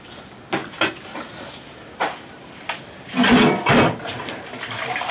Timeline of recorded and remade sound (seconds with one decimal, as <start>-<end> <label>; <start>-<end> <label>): 0.0-5.1 recorded